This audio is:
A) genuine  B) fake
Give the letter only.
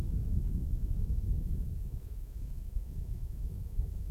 B